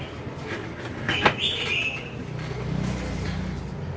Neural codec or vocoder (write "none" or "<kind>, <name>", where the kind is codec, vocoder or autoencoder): none